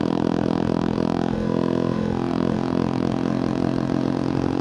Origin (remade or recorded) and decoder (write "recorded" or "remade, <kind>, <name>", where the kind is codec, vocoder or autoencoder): remade, autoencoder, DAC-VAE